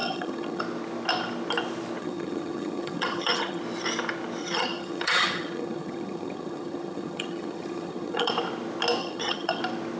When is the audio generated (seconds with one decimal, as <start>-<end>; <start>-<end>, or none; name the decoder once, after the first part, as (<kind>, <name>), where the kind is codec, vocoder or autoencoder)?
0.0-0.6 (vocoder, HiFi-GAN); 2.0-3.6; 4.4-8.3; 9.0-9.6